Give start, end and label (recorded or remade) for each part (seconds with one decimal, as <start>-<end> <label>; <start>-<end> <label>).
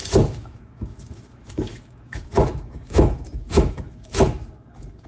0.0-5.1 remade